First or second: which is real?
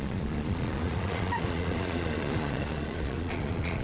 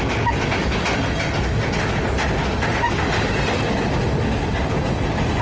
second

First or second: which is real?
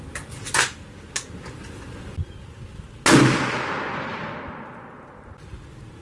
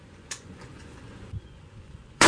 first